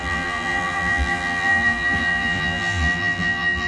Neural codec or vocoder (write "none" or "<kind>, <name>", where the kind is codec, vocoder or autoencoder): vocoder, BigVGAN v2